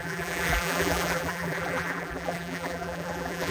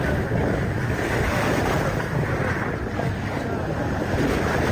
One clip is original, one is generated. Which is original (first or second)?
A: second